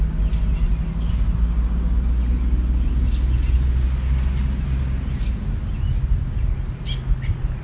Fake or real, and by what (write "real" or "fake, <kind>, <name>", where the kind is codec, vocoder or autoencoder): real